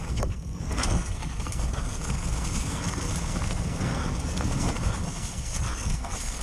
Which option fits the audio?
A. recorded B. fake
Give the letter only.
B